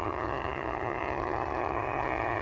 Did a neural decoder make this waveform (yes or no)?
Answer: yes